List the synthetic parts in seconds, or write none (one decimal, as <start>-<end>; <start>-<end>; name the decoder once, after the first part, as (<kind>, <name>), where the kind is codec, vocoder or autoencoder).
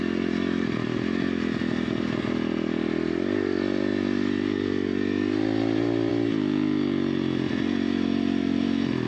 none